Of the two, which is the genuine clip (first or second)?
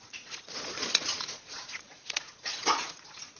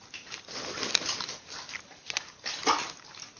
second